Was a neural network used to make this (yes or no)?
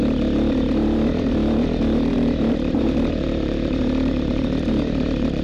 yes